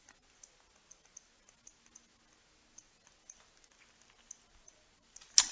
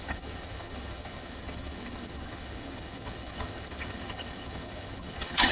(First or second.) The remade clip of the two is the second